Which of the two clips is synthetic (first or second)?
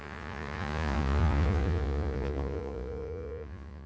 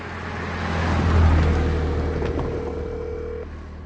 first